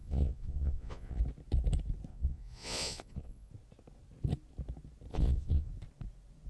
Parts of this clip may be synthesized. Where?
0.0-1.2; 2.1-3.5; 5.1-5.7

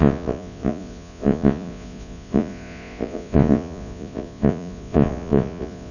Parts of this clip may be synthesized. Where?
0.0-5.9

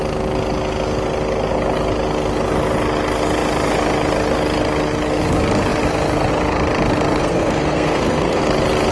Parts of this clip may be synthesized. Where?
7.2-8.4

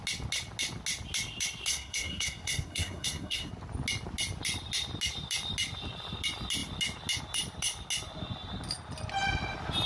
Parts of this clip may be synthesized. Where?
1.7-3.5

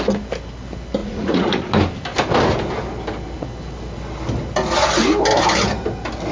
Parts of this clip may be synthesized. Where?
1.0-1.7

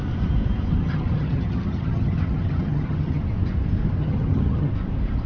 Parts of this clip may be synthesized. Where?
0.8-3.2; 4.0-4.7